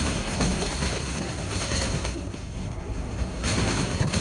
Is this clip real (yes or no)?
no